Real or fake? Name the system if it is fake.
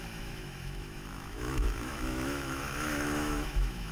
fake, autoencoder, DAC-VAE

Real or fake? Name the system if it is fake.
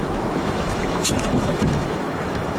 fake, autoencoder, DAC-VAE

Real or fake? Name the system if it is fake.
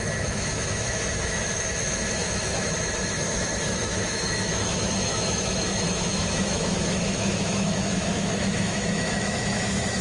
fake, autoencoder, DAC-VAE